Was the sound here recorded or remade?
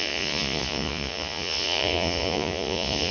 remade